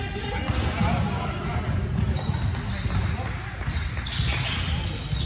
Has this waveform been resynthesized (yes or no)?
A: no